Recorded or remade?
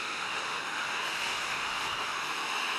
remade